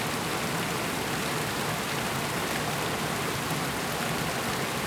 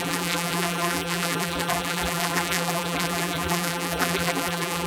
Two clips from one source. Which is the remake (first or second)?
second